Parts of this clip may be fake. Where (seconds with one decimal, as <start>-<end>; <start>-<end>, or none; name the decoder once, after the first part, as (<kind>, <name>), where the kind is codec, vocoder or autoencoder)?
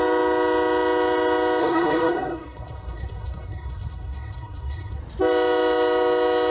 1.6-5.0 (codec, SNAC)